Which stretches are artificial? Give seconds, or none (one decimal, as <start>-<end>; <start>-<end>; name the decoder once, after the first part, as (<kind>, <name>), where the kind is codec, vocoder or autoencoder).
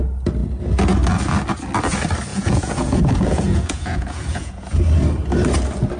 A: 2.3-4.8 (vocoder, Vocos)